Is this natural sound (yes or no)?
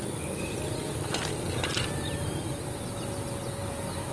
yes